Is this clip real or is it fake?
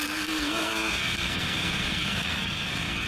fake